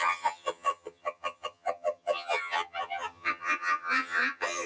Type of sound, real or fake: fake